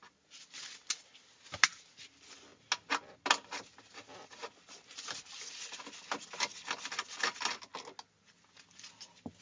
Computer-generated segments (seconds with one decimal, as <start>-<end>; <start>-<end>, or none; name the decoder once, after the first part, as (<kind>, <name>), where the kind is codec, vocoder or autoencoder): none